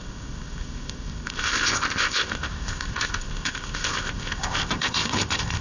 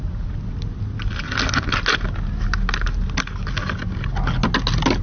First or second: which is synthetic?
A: first